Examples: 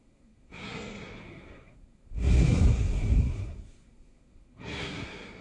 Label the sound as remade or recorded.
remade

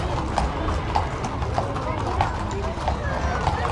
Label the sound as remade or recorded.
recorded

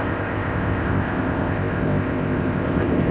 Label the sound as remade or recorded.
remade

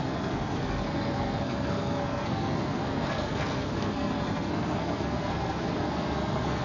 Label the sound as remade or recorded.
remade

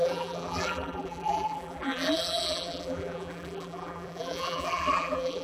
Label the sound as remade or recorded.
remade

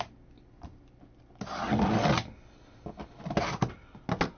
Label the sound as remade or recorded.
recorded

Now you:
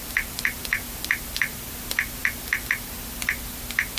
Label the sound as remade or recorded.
remade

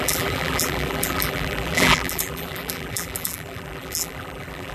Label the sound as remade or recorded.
remade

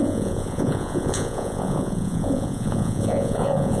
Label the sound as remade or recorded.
remade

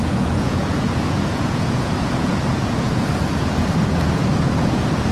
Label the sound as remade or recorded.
remade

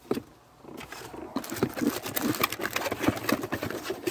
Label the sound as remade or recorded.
recorded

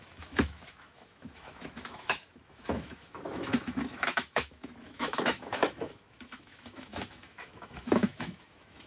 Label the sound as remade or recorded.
remade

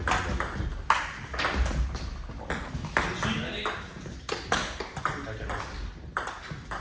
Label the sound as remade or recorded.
recorded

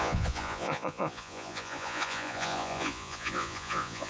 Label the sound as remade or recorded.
remade